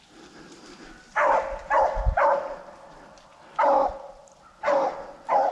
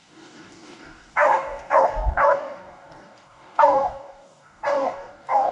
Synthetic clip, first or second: second